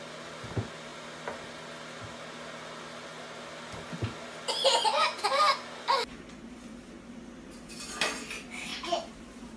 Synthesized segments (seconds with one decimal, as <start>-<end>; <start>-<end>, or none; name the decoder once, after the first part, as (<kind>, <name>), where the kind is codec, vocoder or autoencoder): none